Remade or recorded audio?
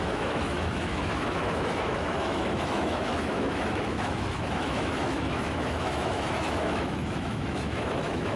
remade